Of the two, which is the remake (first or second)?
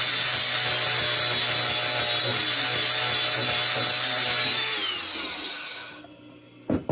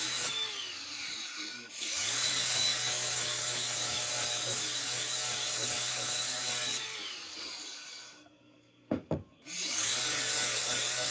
second